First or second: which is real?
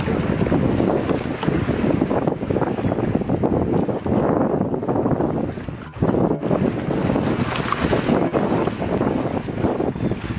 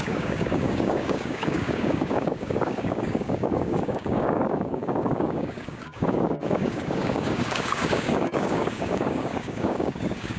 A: first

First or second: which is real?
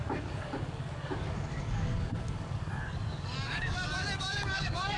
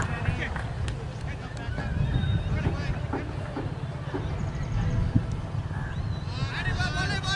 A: second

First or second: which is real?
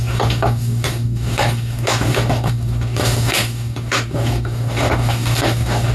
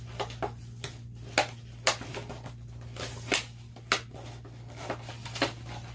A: second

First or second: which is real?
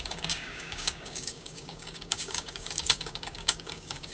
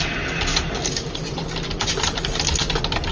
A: second